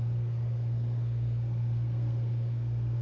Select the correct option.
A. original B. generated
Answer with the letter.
B